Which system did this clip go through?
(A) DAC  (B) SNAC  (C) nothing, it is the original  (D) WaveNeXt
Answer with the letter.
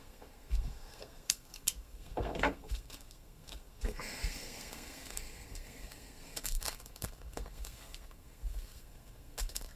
B